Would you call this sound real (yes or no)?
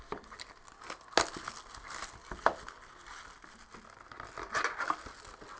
yes